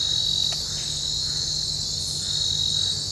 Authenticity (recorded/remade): recorded